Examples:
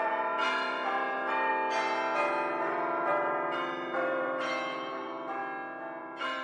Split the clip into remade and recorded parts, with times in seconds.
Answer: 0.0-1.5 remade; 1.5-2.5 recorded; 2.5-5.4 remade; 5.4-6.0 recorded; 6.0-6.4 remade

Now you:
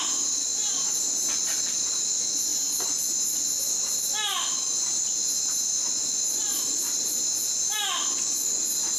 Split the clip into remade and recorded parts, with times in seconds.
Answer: 0.0-9.0 recorded

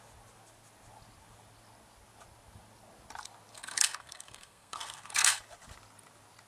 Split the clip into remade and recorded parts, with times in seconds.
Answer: 0.0-3.5 recorded; 3.5-5.4 remade; 5.4-6.5 recorded

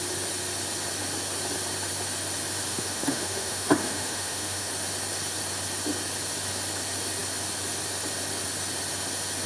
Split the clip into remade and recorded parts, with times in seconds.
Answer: 0.0-2.7 recorded; 2.7-4.7 remade; 4.7-9.5 recorded

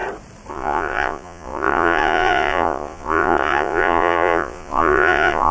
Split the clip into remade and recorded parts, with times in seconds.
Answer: 0.0-0.5 recorded; 0.5-5.5 remade

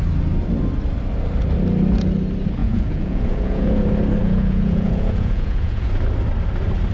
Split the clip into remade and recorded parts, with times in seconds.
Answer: 0.0-2.6 recorded; 2.6-3.8 remade; 3.8-4.2 recorded; 4.2-5.9 remade; 5.9-6.9 recorded

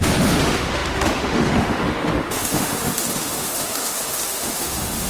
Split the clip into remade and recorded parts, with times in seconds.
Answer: 0.0-5.1 remade